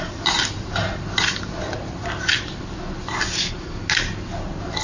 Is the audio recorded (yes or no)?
yes